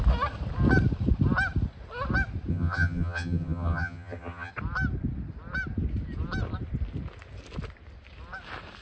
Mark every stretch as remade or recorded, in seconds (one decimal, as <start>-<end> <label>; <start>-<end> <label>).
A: 0.0-2.5 recorded; 2.5-4.5 remade; 4.5-8.8 recorded